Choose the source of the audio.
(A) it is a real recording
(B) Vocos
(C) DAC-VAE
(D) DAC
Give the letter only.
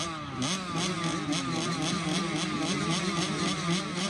A